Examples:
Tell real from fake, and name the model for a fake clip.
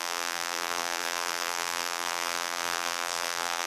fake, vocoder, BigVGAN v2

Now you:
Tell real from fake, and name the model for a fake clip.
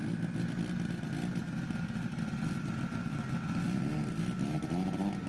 real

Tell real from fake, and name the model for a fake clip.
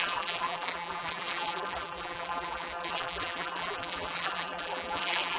fake, vocoder, BigVGAN v2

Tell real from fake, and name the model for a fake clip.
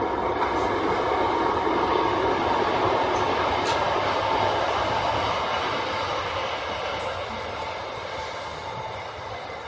real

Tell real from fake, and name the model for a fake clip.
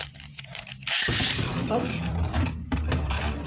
fake, vocoder, BigVGAN v2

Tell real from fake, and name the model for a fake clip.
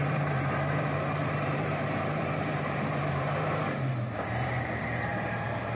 fake, vocoder, BigVGAN v2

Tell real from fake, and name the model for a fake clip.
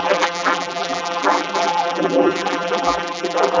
fake, vocoder, BigVGAN v2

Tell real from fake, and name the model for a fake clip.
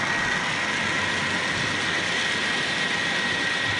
real